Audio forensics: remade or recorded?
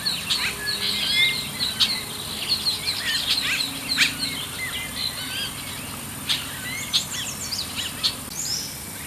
recorded